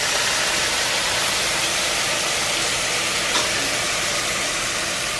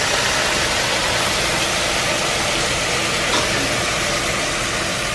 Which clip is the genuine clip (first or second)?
second